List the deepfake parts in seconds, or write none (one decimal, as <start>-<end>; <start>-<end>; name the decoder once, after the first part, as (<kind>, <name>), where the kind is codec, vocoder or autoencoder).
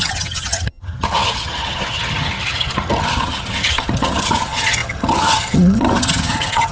0.0-6.7 (vocoder, HiFi-GAN)